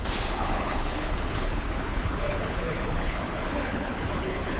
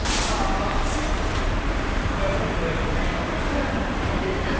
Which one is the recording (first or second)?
second